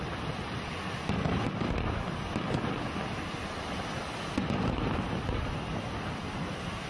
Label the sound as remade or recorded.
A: recorded